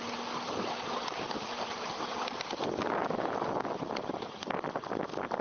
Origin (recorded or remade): recorded